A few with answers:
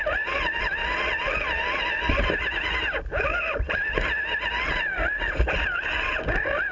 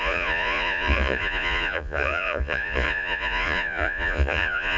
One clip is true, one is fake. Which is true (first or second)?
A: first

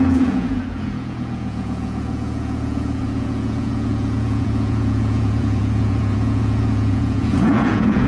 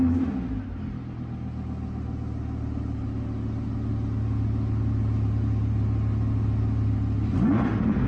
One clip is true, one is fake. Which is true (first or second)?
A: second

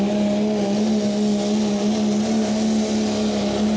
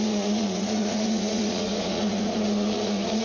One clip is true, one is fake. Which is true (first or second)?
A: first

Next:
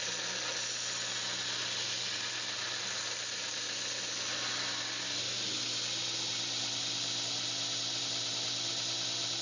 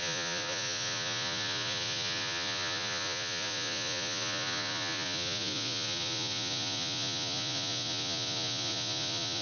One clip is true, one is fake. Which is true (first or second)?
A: first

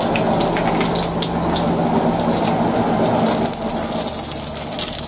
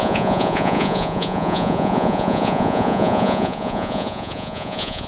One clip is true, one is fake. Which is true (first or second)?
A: first